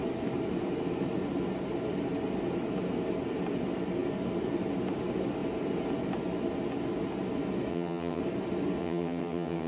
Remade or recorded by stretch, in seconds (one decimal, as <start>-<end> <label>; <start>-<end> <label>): 0.0-7.7 recorded; 7.7-8.2 remade; 8.2-8.8 recorded; 8.8-9.7 remade